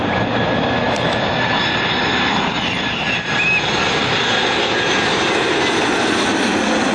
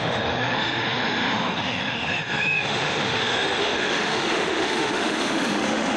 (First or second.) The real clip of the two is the first